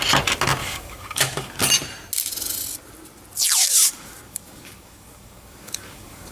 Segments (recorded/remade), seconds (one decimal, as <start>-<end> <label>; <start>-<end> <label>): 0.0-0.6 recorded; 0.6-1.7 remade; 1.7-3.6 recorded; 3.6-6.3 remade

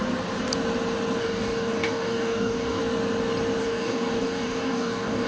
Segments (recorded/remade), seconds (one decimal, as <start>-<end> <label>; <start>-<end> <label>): 0.0-1.2 recorded; 1.2-2.8 remade; 2.8-3.6 recorded; 3.6-5.3 remade

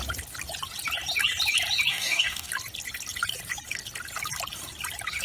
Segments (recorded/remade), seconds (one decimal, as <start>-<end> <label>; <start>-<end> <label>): 0.0-1.9 recorded; 1.9-2.5 remade; 2.5-5.2 recorded